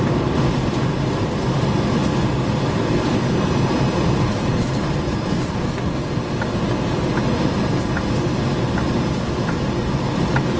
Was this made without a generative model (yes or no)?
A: yes